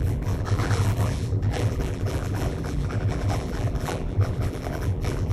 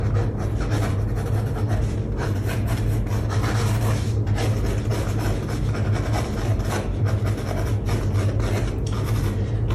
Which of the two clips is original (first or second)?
second